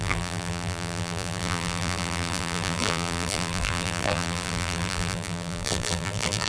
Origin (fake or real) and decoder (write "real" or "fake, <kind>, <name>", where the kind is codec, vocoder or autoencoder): fake, vocoder, BigVGAN v2